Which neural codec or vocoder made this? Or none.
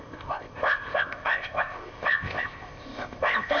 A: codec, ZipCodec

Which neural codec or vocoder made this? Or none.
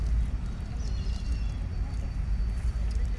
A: none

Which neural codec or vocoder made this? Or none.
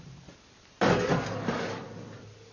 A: none